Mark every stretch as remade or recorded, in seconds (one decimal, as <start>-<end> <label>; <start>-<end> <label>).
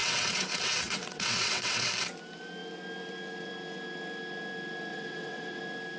0.0-1.9 remade; 1.9-4.9 recorded; 4.9-5.6 remade; 5.6-6.0 recorded